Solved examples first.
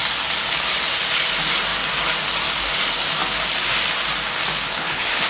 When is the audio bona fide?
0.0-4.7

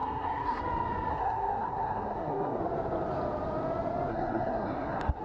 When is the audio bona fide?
0.6-1.1; 2.6-4.1

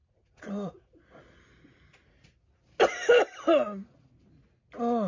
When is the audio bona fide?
0.8-5.1

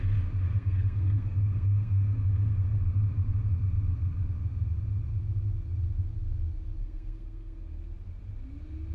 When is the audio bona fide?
0.0-0.5; 2.8-6.8; 7.8-8.9

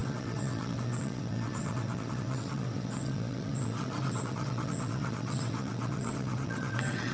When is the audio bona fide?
none

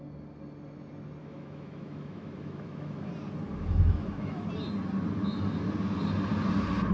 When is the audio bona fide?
0.0-1.2; 3.1-3.6; 4.5-6.9